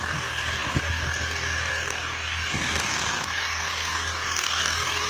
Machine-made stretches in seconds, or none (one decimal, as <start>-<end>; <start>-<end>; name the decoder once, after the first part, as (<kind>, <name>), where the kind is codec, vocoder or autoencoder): 0.0-5.1 (codec, DAC)